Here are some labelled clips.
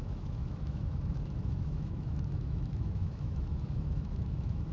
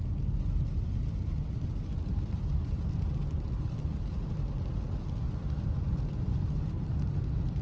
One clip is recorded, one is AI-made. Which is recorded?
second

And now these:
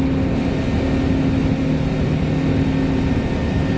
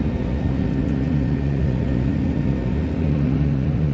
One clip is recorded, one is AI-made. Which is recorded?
first